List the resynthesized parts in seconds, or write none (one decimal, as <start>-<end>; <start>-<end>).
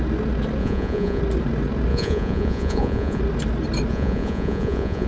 0.6-1.2; 1.9-3.2; 3.9-5.1